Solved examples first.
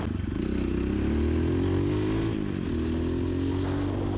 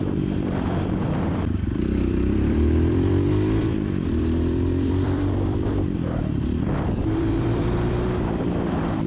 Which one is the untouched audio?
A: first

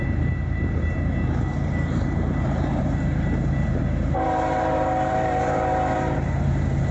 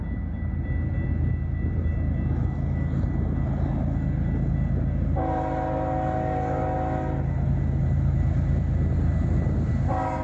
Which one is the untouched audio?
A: second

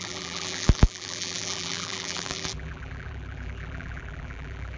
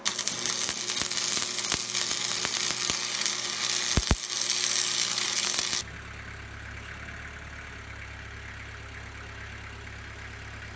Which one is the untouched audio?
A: second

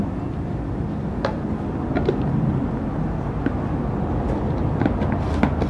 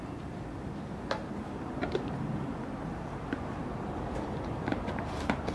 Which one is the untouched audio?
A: first